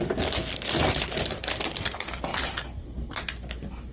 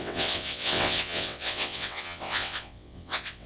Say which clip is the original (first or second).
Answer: first